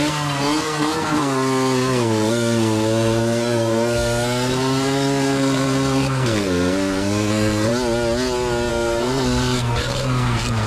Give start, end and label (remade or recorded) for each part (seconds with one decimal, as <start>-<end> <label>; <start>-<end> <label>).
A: 0.0-7.7 remade; 7.7-8.7 recorded; 8.7-10.7 remade